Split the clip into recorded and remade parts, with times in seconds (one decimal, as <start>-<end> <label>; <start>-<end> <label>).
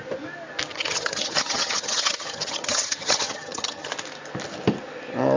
0.0-0.7 recorded; 0.7-3.9 remade; 3.9-5.4 recorded